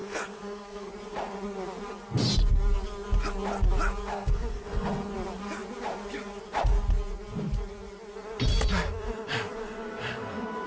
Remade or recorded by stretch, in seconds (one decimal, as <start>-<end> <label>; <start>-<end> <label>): 0.0-0.9 remade; 0.9-4.1 recorded; 4.1-5.1 remade; 5.1-10.7 recorded